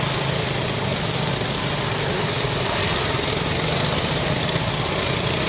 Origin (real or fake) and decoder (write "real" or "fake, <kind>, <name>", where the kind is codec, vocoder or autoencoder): real